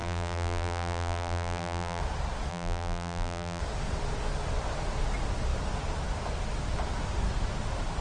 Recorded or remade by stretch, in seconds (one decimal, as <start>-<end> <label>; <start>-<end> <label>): 0.0-2.0 remade; 2.0-2.5 recorded; 2.5-3.6 remade; 3.6-8.0 recorded